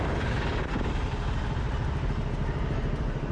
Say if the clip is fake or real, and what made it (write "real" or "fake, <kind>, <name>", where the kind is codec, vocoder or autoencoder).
real